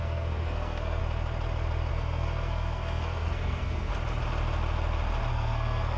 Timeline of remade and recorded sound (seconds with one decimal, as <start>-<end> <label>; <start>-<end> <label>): 0.0-1.0 remade; 1.0-1.9 recorded; 1.9-3.9 remade; 3.9-5.3 recorded; 5.3-6.0 remade